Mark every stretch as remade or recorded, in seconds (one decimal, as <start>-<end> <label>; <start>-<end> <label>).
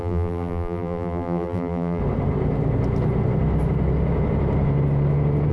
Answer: 0.0-2.0 remade; 2.0-5.5 recorded